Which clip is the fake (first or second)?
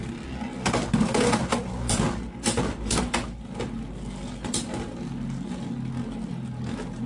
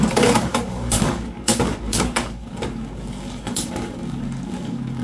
second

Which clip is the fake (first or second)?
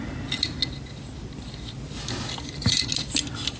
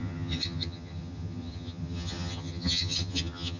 second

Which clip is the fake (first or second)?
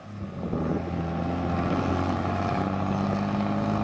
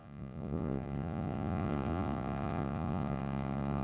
second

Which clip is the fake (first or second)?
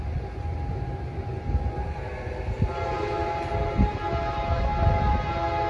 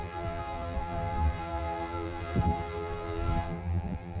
second